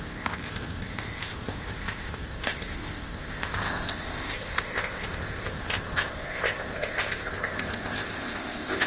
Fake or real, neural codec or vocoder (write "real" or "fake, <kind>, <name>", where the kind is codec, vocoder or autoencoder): fake, codec, ZipCodec